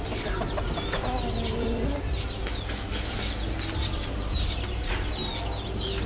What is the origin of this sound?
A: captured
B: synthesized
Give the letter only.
A